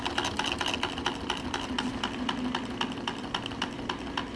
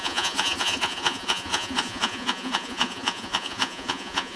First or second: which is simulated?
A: second